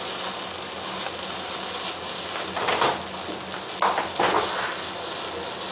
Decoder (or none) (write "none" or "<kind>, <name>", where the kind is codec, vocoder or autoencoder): none